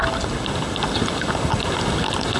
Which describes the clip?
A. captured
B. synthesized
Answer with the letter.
A